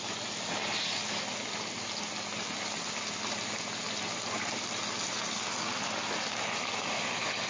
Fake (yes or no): no